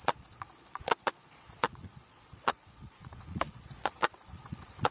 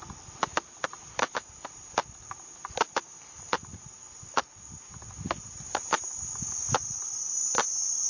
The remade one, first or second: first